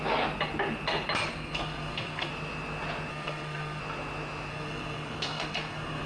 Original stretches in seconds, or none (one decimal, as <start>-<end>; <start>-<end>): 0.0-1.3; 2.3-3.1; 3.8-4.5